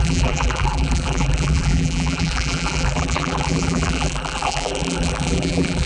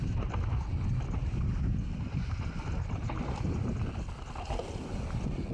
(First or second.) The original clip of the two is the second